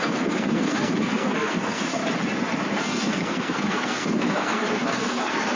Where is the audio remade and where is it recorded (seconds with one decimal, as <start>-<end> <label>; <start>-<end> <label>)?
0.0-2.0 remade; 2.0-2.8 recorded; 2.8-5.6 remade